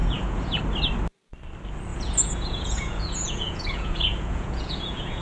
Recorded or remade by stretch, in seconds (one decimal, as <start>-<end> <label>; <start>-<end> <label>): 0.0-0.6 remade; 0.6-1.9 recorded; 1.9-5.2 remade